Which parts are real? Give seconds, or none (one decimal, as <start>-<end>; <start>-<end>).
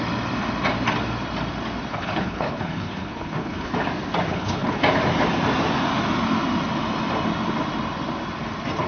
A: 0.0-1.9; 3.7-4.3; 4.8-8.9